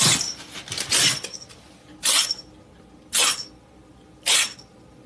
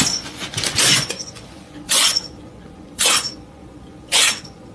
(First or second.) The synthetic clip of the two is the second